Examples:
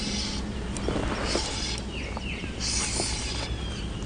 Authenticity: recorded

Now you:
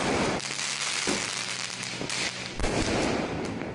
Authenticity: recorded